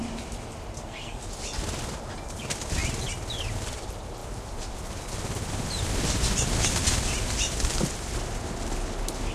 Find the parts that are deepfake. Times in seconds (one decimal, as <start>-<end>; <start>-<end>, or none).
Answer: 0.7-1.2